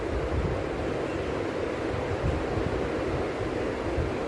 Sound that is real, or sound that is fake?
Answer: real